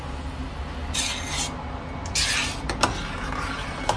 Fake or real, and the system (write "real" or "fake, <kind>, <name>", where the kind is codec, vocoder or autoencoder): real